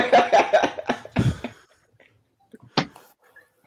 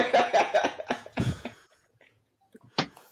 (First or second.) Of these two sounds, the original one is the first